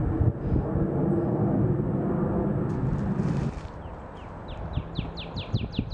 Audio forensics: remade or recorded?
recorded